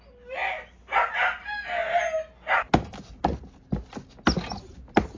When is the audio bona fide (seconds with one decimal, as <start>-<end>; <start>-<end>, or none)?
0.0-5.2